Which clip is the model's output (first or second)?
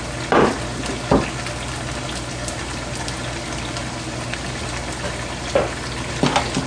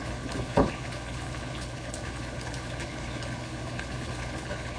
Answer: second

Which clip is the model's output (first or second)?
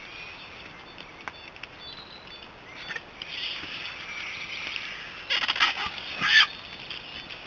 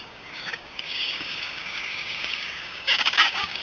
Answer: second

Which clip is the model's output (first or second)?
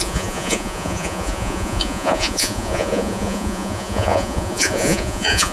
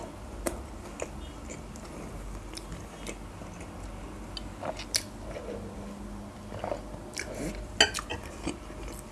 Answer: first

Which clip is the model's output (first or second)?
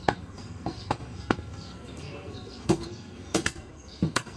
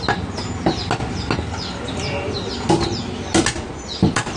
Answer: first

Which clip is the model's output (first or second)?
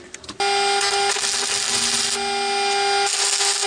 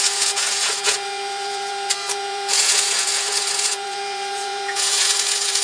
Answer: second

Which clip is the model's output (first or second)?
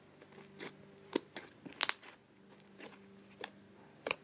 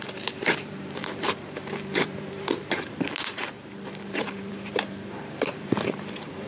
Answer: second